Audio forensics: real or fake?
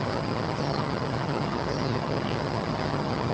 fake